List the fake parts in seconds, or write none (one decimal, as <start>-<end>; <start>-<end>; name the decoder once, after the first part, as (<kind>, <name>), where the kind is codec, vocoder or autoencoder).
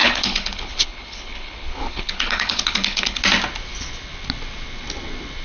0.0-3.2 (codec, HILCodec)